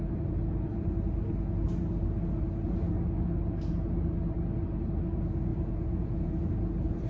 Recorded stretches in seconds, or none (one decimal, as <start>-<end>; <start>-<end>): 0.0-5.5; 6.3-7.1